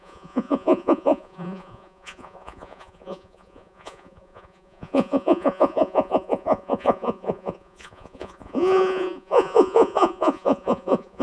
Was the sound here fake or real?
fake